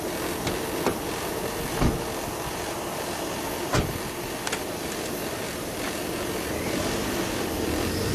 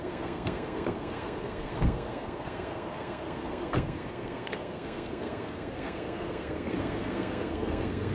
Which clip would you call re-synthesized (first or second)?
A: second